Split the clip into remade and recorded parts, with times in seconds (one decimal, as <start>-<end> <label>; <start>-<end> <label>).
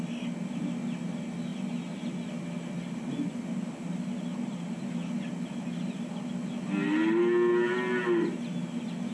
0.0-9.1 recorded